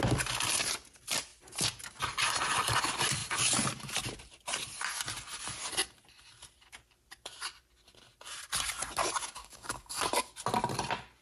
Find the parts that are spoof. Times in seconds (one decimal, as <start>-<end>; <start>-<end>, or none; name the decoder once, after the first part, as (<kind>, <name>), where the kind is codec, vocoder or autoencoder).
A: 9.4-10.1 (codec, DAC)